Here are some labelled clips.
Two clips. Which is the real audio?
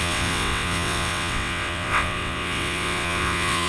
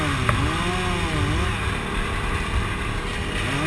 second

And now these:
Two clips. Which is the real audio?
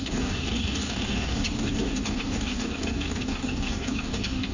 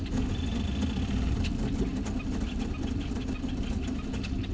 second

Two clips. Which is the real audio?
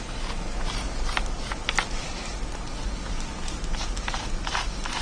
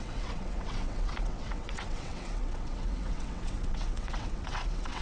first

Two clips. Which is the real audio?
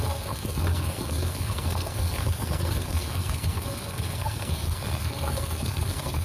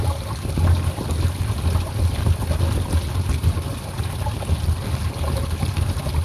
second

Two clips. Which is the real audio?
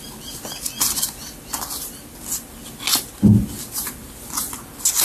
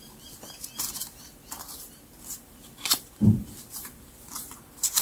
first